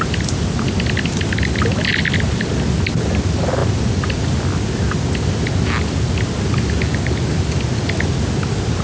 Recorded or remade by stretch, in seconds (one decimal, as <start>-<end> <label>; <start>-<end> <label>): 0.0-8.8 recorded